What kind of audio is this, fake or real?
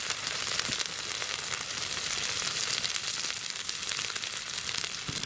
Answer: fake